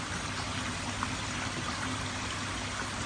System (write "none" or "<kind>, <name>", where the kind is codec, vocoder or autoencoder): none